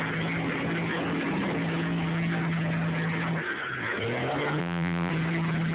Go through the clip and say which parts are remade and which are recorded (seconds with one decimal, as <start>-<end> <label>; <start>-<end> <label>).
0.0-4.6 recorded; 4.6-5.1 remade; 5.1-5.7 recorded